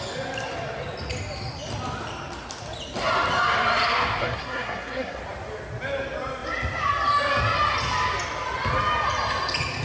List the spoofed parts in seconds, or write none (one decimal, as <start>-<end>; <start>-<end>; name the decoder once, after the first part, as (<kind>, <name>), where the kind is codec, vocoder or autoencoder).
4.2-5.2 (codec, SNAC)